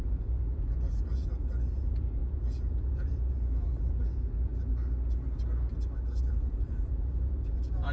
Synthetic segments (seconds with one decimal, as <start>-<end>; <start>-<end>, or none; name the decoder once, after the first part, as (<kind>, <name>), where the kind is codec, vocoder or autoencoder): 0.0-4.5 (vocoder, Vocos); 6.2-7.9